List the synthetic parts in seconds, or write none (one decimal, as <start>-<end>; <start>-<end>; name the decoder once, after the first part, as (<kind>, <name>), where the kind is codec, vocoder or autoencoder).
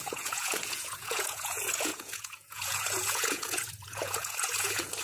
0.0-5.0 (vocoder, Vocos)